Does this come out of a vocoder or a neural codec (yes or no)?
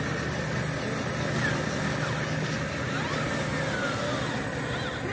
no